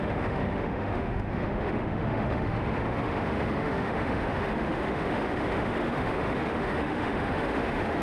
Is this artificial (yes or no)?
yes